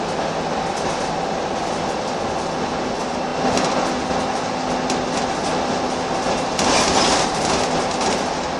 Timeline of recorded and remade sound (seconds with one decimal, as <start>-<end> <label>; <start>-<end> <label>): 0.0-8.6 recorded